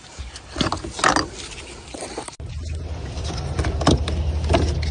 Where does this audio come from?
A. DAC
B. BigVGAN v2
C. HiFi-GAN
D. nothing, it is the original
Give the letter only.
D